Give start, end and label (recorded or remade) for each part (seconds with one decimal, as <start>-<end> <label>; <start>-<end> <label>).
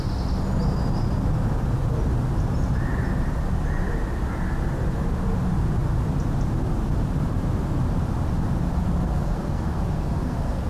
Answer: 0.0-8.9 recorded; 8.9-10.7 remade